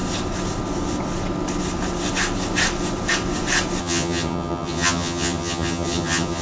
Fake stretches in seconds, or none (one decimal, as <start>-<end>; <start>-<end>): 3.8-6.4